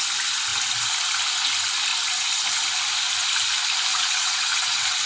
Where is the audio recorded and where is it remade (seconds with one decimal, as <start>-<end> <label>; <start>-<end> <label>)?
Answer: 0.0-3.9 recorded; 3.9-5.1 remade

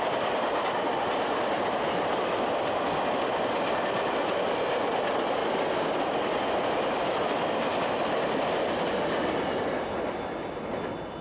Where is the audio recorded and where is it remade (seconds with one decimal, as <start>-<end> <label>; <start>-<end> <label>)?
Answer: 0.0-11.2 recorded